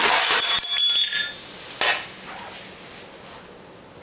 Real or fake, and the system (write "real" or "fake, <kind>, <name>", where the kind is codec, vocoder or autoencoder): real